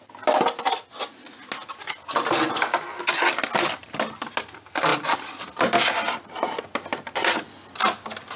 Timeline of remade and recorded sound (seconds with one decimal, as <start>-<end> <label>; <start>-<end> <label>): 0.0-4.9 recorded; 4.9-6.6 remade; 6.6-8.4 recorded